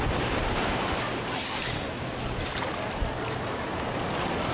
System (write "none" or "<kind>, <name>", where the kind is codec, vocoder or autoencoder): none